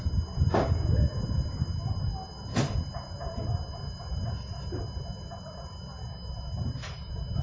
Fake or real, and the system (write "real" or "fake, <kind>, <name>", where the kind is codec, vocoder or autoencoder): real